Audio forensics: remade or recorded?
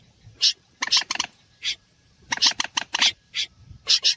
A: remade